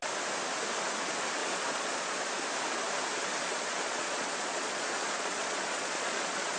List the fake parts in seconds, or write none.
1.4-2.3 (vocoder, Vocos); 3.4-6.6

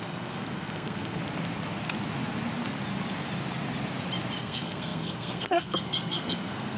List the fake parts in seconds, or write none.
0.0-1.2 (codec, SNAC); 4.4-6.8

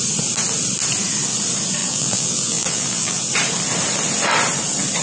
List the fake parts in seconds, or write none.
1.8-3.2 (vocoder, BigVGAN v2)

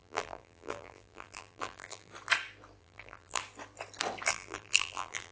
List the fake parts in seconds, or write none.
0.0-2.1 (vocoder, BigVGAN v2); 2.8-3.4; 4.3-5.3

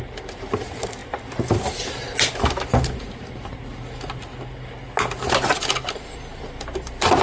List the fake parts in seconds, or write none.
none

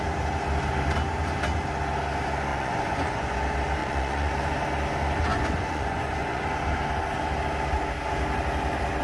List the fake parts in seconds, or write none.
2.5-3.4 (vocoder, Vocos); 3.8-4.3; 5.3-6.4

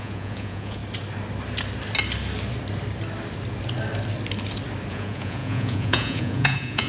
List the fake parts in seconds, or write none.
0.0-0.8 (vocoder, Vocos); 4.9-6.9